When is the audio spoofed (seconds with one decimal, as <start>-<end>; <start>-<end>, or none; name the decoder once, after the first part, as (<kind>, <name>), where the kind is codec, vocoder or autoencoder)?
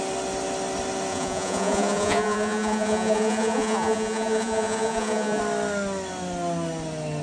1.1-5.4 (vocoder, Vocos)